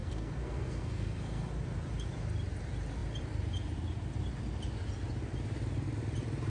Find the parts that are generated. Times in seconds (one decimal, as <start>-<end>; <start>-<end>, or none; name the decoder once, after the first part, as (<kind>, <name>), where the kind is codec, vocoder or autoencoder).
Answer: 0.0-1.5 (codec, SNAC)